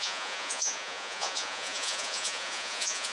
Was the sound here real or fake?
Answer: fake